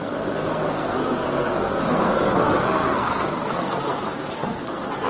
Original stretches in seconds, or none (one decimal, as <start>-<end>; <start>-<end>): none